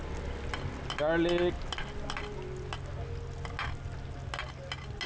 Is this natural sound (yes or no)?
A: yes